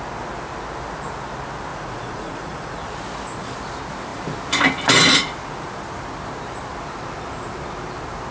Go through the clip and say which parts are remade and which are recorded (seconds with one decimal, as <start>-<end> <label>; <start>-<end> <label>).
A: 0.0-1.7 recorded; 1.7-2.8 remade; 2.8-8.3 recorded